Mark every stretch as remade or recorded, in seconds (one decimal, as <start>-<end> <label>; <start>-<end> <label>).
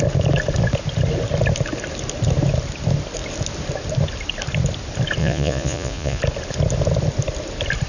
0.0-5.2 recorded; 5.2-6.2 remade; 6.2-7.9 recorded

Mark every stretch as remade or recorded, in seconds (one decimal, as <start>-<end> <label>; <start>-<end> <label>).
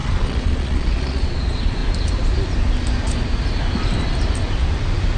0.0-1.8 remade; 1.8-5.2 recorded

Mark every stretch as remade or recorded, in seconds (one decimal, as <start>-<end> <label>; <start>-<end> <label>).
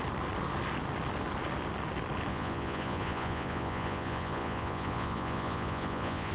0.0-2.3 recorded; 2.3-6.3 remade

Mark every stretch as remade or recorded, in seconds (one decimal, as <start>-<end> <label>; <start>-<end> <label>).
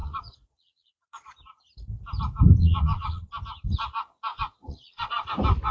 0.0-1.6 remade; 1.6-2.6 recorded; 2.6-3.3 remade; 3.3-4.3 recorded; 4.3-5.3 remade; 5.3-5.7 recorded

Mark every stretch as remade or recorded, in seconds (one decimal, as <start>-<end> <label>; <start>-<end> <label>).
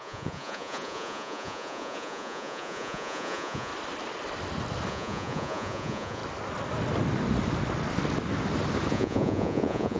0.0-3.7 remade; 3.7-4.9 recorded; 4.9-6.2 remade; 6.2-8.9 recorded; 8.9-10.0 remade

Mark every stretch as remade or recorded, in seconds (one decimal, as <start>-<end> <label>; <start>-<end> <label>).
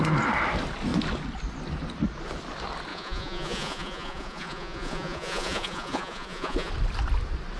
0.0-2.9 recorded; 2.9-6.7 remade; 6.7-7.6 recorded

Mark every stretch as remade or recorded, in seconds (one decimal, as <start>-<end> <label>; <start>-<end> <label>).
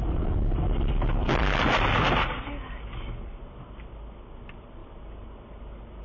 0.0-6.0 recorded